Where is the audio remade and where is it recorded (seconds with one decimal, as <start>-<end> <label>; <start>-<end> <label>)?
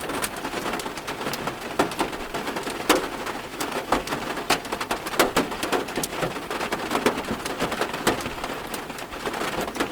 0.0-3.5 recorded; 3.5-4.1 remade; 4.1-9.9 recorded